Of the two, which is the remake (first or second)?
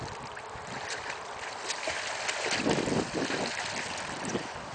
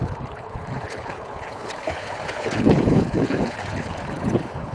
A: second